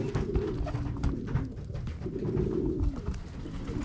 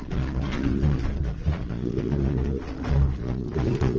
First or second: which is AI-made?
second